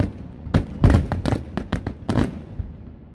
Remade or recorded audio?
remade